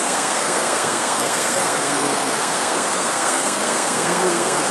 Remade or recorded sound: remade